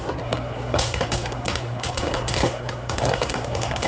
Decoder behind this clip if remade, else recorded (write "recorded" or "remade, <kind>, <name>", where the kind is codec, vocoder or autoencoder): remade, codec, SNAC